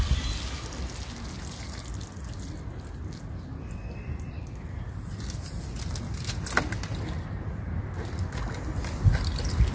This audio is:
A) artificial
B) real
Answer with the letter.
B